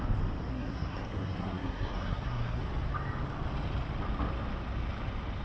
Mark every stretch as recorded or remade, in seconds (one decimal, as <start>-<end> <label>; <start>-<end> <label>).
0.0-0.5 recorded; 0.5-2.6 remade; 2.6-5.4 recorded